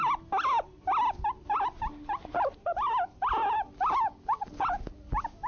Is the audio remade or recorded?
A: recorded